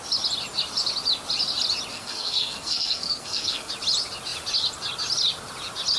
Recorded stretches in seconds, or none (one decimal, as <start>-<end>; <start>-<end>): 0.0-1.9; 3.7-6.0

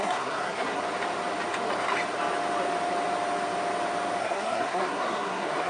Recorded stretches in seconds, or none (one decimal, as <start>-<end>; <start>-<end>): 0.8-4.2

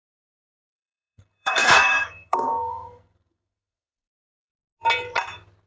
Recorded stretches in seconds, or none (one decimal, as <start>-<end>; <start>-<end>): 4.5-5.7

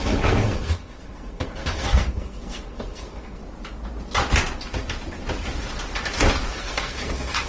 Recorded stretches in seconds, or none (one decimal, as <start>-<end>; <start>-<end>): 3.4-6.5